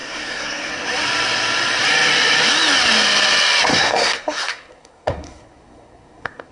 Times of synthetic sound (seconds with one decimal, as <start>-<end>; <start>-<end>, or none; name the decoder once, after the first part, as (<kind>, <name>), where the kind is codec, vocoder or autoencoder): 0.0-0.7 (codec, SNAC); 3.7-6.5